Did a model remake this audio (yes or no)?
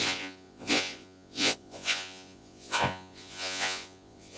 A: yes